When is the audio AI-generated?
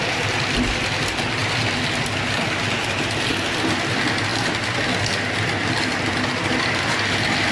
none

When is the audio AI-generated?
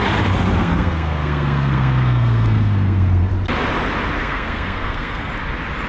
0.6-3.3 (codec, SNAC); 4.2-5.3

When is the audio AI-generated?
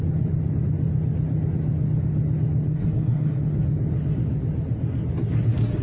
2.7-3.4 (codec, SNAC)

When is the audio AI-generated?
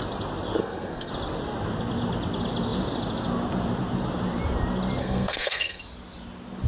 0.6-1.1 (codec, SNAC); 5.0-5.8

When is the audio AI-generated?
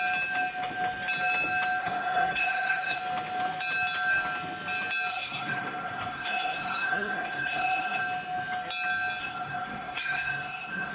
1.8-3.0 (codec, SNAC); 5.1-8.0; 9.2-10.9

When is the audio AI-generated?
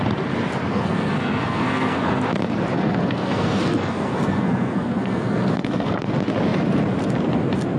0.7-2.2 (codec, SNAC); 2.7-6.1